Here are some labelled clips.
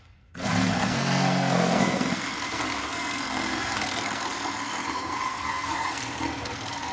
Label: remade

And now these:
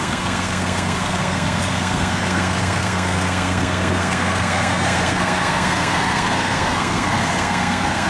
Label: remade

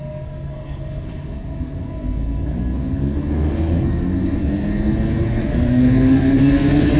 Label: remade